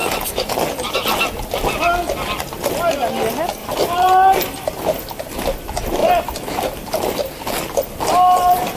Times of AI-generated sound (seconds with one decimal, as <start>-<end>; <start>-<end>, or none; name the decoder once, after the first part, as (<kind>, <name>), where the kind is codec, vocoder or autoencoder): 3.6-4.7 (vocoder, BigVGAN v2); 6.0-7.2